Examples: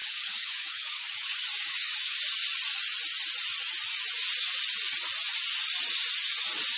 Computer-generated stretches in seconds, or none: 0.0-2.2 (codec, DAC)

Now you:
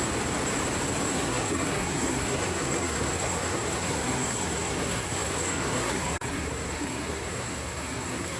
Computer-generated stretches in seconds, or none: 1.1-8.4 (codec, SNAC)